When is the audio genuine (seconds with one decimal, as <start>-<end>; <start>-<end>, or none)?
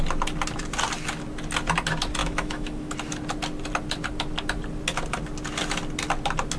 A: 0.0-2.2; 2.9-6.6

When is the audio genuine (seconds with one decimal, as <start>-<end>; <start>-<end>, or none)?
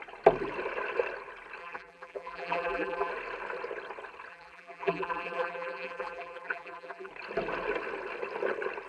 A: 0.0-1.6; 3.1-4.3; 7.1-8.9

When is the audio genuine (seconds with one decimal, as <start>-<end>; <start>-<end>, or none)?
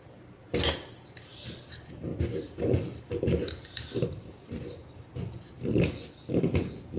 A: 0.0-7.0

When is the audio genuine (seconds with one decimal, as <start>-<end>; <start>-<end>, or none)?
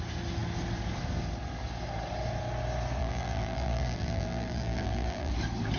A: 0.0-3.0; 5.3-5.8